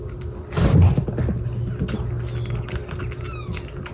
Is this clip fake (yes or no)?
no